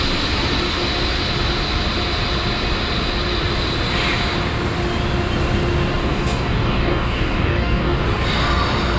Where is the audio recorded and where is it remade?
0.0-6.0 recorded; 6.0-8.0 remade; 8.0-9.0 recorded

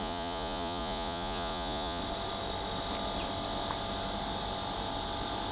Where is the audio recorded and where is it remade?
0.0-2.0 remade; 2.0-5.5 recorded

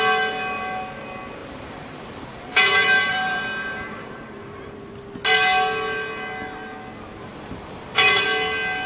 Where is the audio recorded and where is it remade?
0.0-1.4 recorded; 1.4-4.9 remade; 4.9-7.2 recorded; 7.2-8.2 remade; 8.2-8.9 recorded

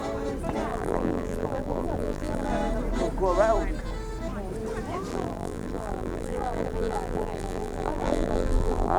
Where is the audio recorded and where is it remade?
0.0-0.7 recorded; 0.7-2.5 remade; 2.5-5.1 recorded; 5.1-9.0 remade